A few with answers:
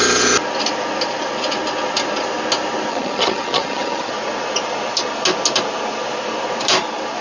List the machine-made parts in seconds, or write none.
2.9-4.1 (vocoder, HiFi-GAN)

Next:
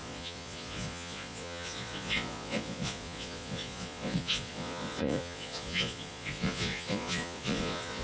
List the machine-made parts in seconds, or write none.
0.0-8.0 (vocoder, Vocos)

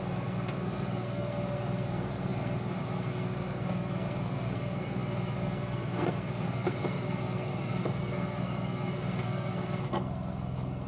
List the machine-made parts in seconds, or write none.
0.0-10.9 (codec, SNAC)